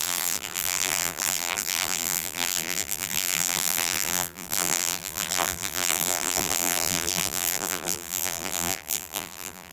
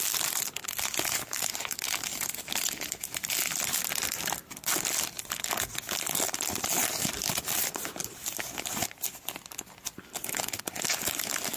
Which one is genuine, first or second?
second